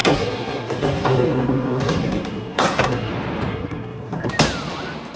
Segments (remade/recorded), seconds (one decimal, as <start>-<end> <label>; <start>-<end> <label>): 0.0-3.1 remade; 3.1-3.5 recorded; 3.5-4.3 remade; 4.3-5.2 recorded